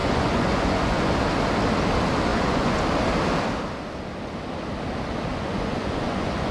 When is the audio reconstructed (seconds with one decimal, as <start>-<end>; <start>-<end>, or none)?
0.0-1.1; 2.3-2.8; 5.3-6.5